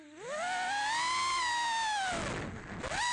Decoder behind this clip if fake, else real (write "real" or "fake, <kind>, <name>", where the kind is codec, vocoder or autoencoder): real